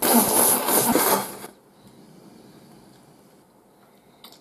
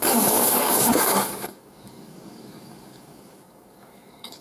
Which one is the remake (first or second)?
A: second